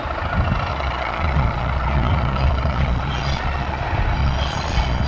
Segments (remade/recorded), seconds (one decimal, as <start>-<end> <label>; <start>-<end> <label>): 0.0-0.7 recorded; 0.7-3.8 remade; 3.8-4.2 recorded; 4.2-5.1 remade